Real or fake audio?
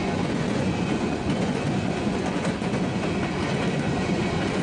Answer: fake